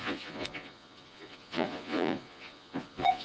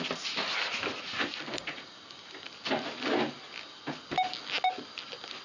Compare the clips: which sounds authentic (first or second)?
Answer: second